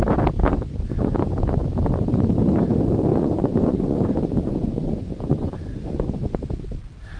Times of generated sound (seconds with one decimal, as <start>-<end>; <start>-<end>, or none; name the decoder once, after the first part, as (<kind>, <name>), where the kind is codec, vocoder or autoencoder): 0.4-1.5 (vocoder, Vocos); 3.1-6.4